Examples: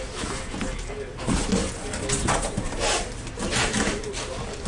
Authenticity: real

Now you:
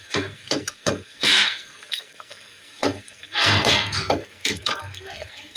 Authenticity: fake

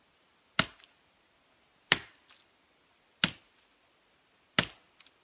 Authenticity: real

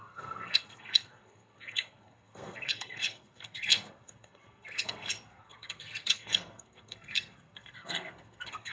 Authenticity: fake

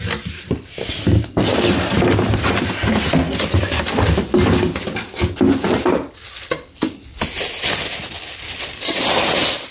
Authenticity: real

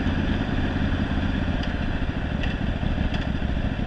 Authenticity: real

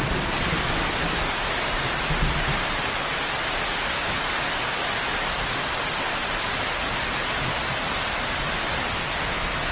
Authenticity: real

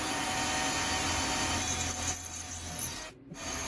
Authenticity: real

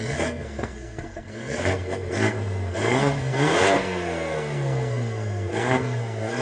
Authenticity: fake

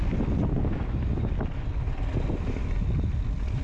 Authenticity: real